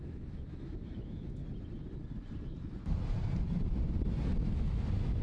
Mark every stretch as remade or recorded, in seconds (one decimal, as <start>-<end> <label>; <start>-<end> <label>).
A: 0.0-1.4 remade; 1.4-4.5 recorded; 4.5-5.2 remade